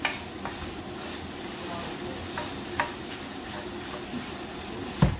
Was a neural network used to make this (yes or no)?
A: no